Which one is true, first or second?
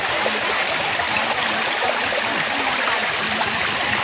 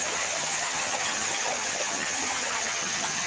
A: first